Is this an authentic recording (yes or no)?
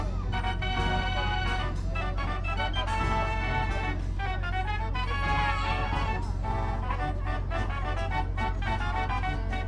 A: yes